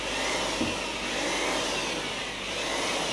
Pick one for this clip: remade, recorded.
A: recorded